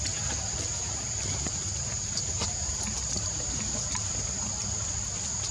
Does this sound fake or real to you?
fake